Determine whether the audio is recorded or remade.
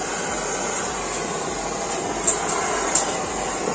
recorded